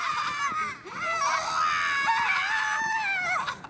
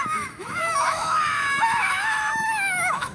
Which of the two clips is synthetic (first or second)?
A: second